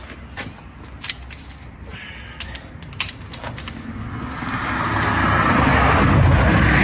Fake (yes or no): no